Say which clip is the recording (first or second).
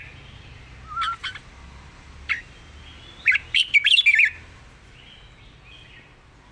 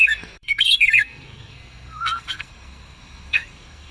first